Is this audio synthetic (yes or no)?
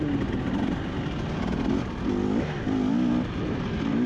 no